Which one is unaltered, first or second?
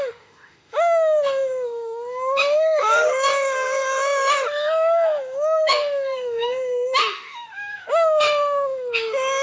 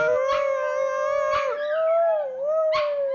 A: second